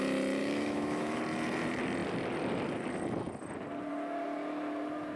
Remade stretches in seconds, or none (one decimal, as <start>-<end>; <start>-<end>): 0.4-1.2